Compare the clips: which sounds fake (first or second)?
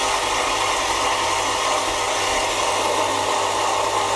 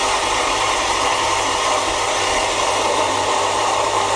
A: second